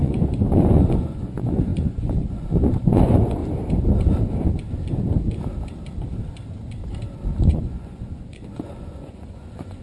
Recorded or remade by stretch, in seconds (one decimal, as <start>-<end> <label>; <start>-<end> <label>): 0.0-3.4 remade; 3.4-7.4 recorded; 7.4-9.8 remade

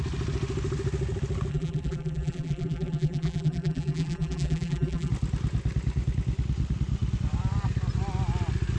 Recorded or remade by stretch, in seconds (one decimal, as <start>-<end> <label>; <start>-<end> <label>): 0.0-1.5 recorded; 1.5-5.1 remade; 5.1-8.8 recorded

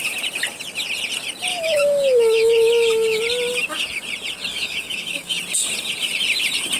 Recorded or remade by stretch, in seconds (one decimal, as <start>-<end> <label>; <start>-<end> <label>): 0.0-1.5 recorded; 1.5-3.2 remade; 3.2-4.5 recorded; 4.5-5.4 remade; 5.4-6.8 recorded